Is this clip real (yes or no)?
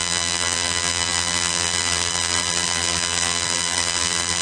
no